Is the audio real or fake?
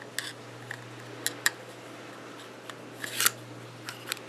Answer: real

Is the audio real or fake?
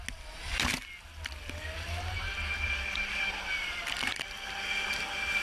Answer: real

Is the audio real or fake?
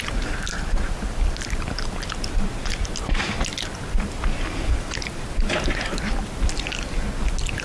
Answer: real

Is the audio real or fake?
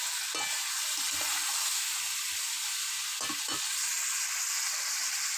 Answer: real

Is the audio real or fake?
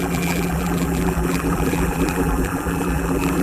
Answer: fake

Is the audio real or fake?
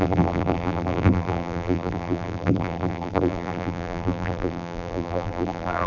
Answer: fake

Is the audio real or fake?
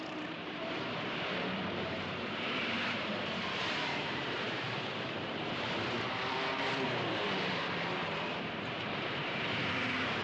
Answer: fake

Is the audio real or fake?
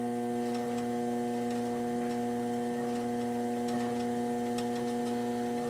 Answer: real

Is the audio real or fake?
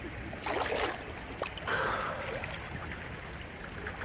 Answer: real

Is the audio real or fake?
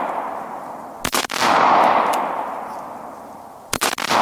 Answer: real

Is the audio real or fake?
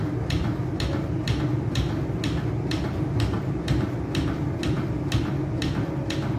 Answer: real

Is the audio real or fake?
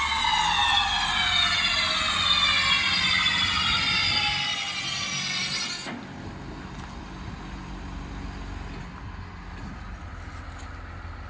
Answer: real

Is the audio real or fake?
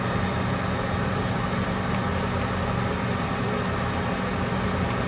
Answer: real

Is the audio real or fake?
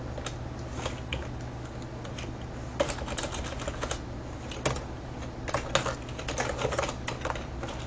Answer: real